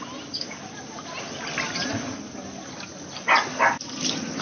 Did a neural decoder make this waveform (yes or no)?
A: no